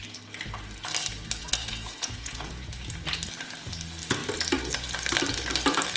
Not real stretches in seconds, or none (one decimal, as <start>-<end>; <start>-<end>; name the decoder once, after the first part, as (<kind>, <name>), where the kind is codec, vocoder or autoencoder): 1.4-2.5 (vocoder, Vocos)